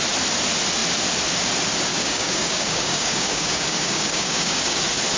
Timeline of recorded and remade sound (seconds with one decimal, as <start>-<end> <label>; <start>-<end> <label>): 0.0-1.9 recorded; 1.9-4.8 remade; 4.8-5.2 recorded